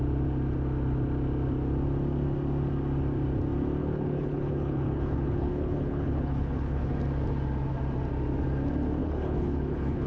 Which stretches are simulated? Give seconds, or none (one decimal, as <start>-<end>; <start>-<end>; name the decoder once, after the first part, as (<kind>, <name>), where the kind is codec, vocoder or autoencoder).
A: 3.8-6.9 (codec, HILCodec); 9.0-10.1